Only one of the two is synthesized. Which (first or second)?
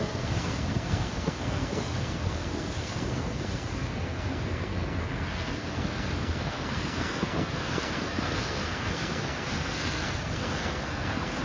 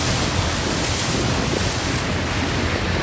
first